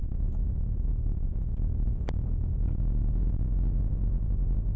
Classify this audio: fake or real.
real